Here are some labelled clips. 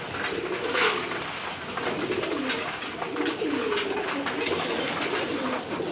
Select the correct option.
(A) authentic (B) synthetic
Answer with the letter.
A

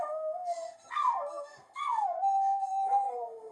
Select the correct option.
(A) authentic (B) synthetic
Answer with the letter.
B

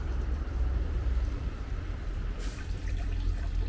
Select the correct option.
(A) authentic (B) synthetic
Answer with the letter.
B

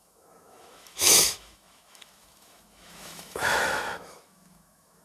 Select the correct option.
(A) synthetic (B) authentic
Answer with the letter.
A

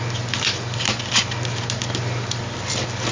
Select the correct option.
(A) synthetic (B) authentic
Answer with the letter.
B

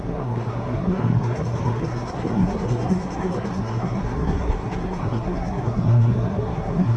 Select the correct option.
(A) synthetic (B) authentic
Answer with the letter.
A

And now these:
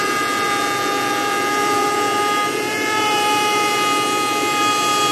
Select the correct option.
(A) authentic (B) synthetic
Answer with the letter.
B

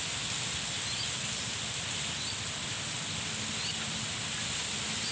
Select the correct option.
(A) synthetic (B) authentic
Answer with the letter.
B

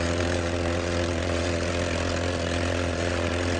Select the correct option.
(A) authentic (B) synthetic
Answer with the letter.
B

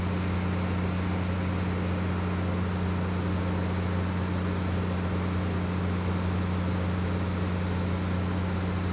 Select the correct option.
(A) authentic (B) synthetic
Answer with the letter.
A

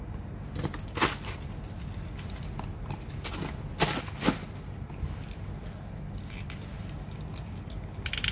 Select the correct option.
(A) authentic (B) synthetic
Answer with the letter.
A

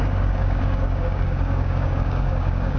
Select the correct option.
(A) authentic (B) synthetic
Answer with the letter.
B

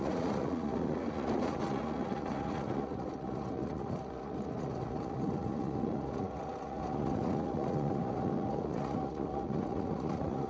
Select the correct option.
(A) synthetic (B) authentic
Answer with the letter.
A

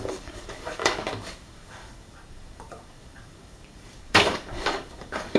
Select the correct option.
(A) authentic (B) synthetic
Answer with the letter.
B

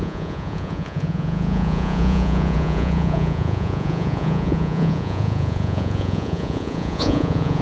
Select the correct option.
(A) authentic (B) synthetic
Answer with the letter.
B